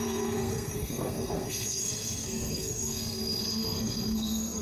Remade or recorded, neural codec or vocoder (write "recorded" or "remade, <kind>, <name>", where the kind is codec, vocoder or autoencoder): remade, codec, SNAC